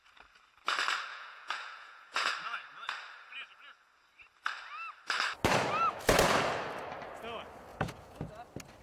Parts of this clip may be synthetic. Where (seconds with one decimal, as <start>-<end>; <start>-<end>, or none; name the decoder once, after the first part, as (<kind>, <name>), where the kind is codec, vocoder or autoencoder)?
1.1-2.3 (vocoder, Vocos); 7.7-8.3